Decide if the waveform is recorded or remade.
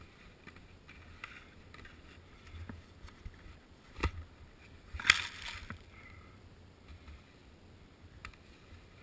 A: recorded